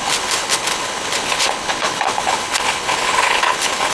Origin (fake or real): fake